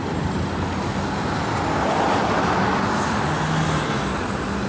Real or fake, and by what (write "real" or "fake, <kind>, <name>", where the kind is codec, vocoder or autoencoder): real